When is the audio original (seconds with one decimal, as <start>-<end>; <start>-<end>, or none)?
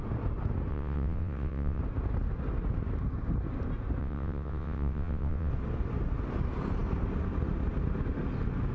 0.0-0.7; 1.8-4.0; 5.5-8.7